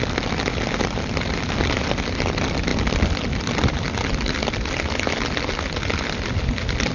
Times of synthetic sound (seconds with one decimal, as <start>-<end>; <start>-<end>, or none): none